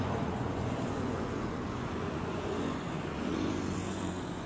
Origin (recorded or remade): remade